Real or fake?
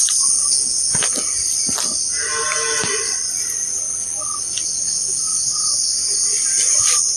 real